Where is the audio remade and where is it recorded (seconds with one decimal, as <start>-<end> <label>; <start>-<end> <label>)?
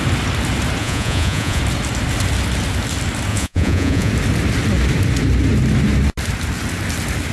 0.0-0.8 recorded; 0.8-1.6 remade; 1.6-3.3 recorded; 3.3-4.1 remade; 4.1-7.3 recorded